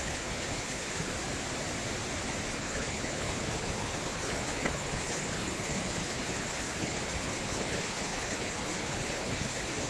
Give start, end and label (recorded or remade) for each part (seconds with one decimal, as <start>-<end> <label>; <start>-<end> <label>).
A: 0.0-1.1 remade; 1.1-2.5 recorded; 2.5-9.9 remade